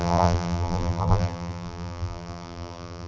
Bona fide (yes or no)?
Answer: no